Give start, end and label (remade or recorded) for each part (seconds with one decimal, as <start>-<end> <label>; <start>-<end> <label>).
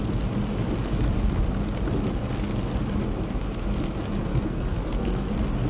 0.0-4.3 recorded; 4.3-5.3 remade; 5.3-5.7 recorded